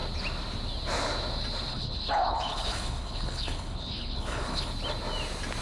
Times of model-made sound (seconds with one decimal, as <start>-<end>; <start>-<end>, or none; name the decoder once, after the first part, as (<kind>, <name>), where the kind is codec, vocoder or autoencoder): 1.7-4.7 (codec, HILCodec)